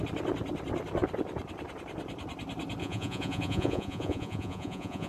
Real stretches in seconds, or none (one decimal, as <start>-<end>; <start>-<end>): 0.0-2.8